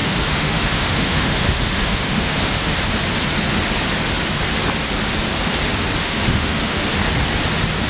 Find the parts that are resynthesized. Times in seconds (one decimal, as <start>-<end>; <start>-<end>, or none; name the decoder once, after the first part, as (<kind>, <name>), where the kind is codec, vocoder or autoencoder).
0.0-2.8 (autoencoder, DAC-VAE); 6.0-6.9